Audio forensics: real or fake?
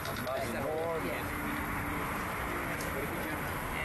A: real